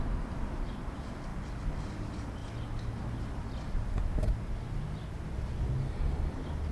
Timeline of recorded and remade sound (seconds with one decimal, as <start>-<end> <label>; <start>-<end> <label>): 0.0-6.7 recorded